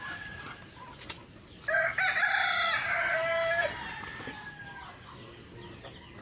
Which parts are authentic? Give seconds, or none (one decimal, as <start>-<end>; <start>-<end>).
0.0-6.2